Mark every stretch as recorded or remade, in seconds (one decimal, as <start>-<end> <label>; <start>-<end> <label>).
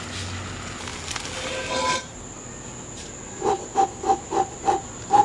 0.0-3.7 recorded; 3.7-4.2 remade; 4.2-5.2 recorded